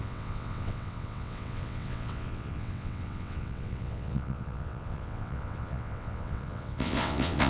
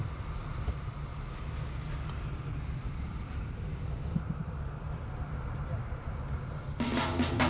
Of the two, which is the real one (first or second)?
second